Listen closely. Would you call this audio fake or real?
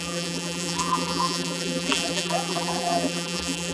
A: fake